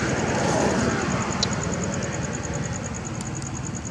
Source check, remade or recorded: recorded